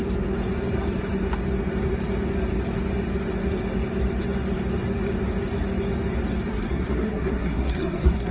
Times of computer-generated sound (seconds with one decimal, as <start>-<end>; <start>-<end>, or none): 6.5-8.3